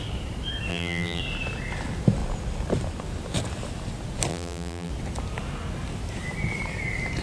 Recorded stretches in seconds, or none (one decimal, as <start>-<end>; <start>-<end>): 0.0-0.7; 1.2-4.3; 4.9-7.2